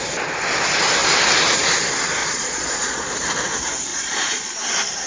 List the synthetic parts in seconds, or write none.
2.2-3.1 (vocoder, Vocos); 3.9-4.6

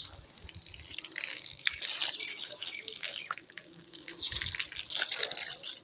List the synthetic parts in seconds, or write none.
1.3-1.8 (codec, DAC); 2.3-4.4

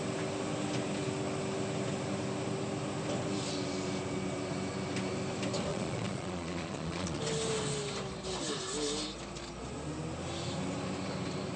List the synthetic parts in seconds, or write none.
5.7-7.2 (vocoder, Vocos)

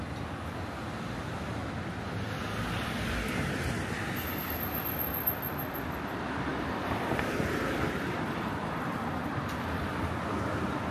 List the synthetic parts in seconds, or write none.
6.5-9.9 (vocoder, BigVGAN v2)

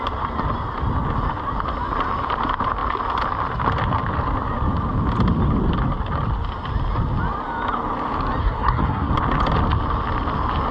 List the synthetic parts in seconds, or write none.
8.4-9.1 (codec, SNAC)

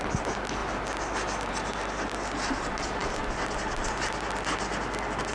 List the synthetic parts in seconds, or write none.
none